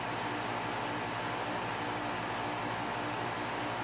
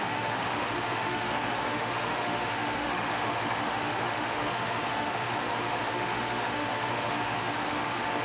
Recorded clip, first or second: first